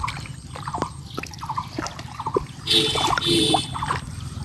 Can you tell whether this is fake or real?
real